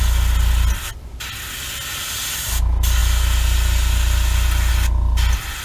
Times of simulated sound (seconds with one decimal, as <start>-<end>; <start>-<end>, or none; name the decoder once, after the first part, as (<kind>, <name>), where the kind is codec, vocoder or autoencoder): none